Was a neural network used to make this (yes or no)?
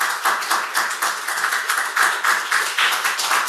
no